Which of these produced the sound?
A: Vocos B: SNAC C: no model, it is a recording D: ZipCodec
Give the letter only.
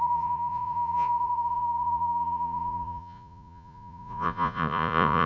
A